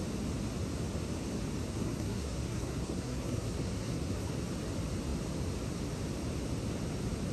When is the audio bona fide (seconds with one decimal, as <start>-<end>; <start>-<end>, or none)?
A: 0.0-1.7; 4.3-7.3